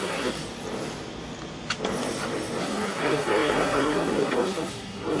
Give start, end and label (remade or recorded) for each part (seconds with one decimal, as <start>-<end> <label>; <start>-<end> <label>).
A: 0.0-0.4 remade; 0.4-2.6 recorded; 2.6-5.2 remade